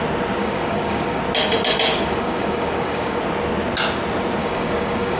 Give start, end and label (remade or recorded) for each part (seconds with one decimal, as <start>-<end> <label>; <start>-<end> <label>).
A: 0.0-0.4 recorded; 0.4-1.2 remade; 1.2-1.9 recorded; 1.9-3.2 remade; 3.2-4.4 recorded; 4.4-5.2 remade